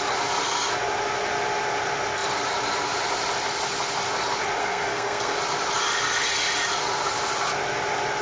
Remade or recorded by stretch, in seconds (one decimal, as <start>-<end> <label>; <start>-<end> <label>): 0.0-4.6 recorded; 4.6-5.4 remade; 5.4-8.2 recorded